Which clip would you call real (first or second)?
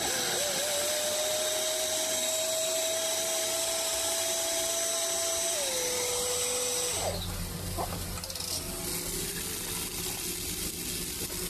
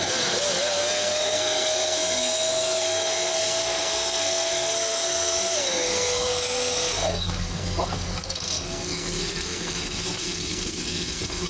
first